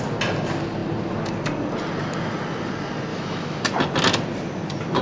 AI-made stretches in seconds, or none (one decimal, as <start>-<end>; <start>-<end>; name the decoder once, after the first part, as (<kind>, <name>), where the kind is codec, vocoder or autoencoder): 3.1-3.6 (autoencoder, DAC-VAE)